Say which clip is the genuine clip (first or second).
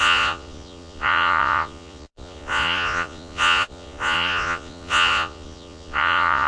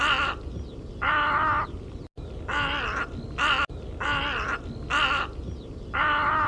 second